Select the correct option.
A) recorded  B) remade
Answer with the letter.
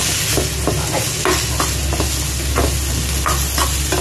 A